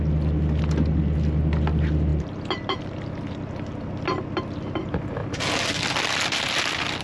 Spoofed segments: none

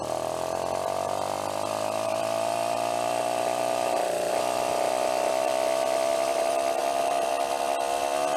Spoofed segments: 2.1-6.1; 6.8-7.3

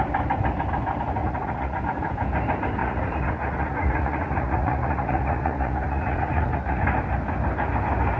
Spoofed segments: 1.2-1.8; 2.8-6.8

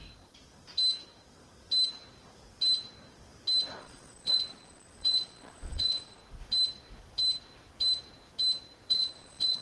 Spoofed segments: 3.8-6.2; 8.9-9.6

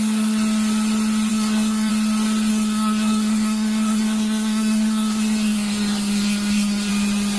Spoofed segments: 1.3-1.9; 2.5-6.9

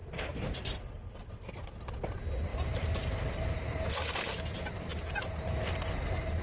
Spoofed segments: 2.5-3.3